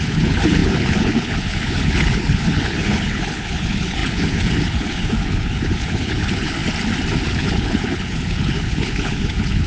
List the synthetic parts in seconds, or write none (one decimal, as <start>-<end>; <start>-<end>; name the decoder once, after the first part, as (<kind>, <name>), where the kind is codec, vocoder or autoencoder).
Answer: 0.0-6.6 (codec, HILCodec); 7.3-9.7